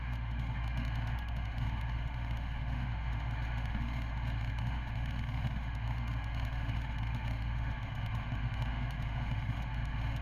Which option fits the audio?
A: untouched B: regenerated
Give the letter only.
B